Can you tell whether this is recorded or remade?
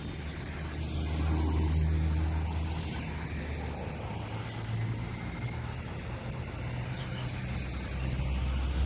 recorded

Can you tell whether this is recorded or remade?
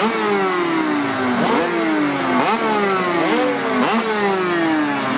recorded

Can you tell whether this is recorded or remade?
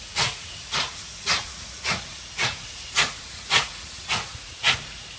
remade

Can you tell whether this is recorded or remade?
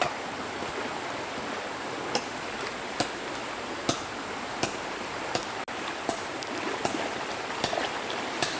recorded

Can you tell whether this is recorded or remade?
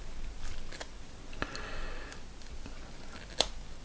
recorded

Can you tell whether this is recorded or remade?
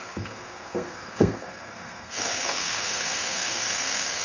remade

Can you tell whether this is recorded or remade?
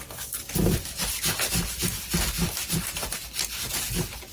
recorded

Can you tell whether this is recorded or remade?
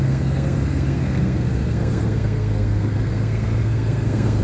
remade